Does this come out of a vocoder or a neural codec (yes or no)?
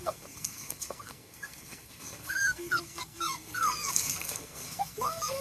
yes